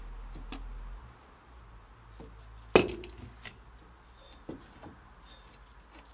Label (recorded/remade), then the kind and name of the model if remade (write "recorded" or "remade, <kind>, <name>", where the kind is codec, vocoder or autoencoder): recorded